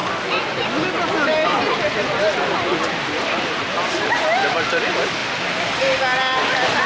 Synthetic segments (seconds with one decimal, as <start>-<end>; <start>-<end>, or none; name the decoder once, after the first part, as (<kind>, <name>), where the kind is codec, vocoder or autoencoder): none